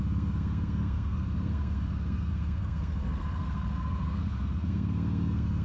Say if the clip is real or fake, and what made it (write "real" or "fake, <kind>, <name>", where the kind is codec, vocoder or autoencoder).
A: fake, codec, SNAC